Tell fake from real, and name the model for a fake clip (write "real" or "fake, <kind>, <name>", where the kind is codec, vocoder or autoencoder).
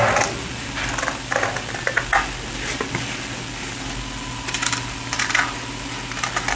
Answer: real